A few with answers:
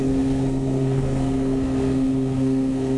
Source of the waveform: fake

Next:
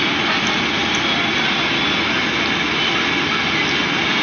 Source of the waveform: real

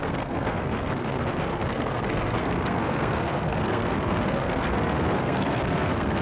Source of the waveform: fake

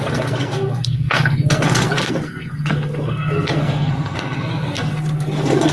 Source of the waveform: fake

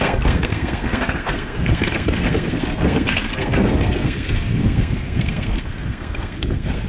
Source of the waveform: fake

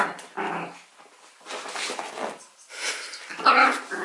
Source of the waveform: real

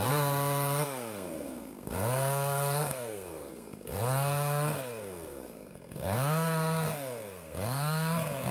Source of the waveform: fake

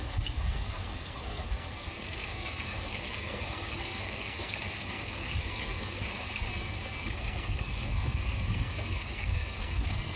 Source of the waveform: fake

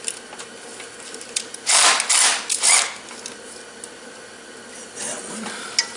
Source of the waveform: real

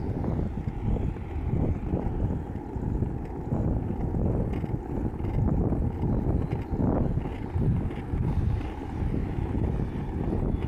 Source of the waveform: real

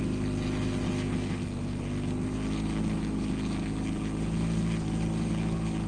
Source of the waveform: real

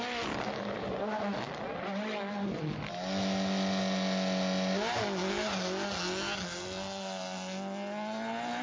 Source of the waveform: real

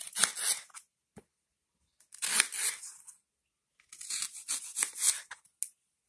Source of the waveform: real